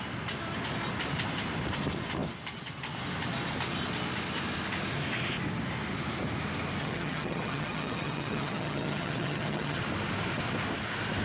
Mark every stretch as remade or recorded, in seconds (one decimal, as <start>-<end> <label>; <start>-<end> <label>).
0.0-6.8 recorded; 6.8-9.8 remade; 9.8-11.2 recorded